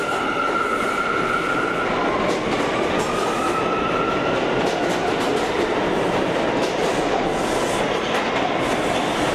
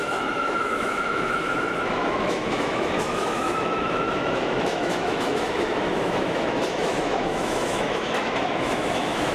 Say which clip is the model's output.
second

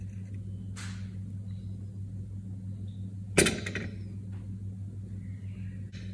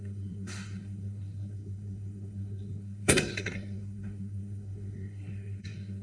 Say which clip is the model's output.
second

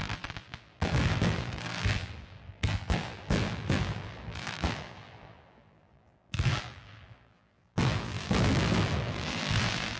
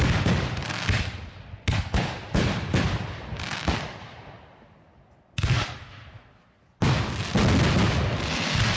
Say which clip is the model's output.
first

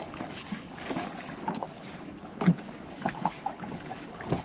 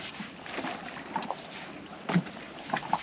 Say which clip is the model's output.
first